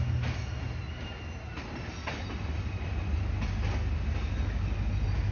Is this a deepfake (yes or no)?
no